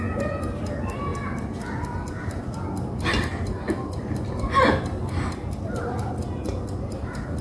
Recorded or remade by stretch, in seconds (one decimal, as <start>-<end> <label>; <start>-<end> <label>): 0.0-7.4 recorded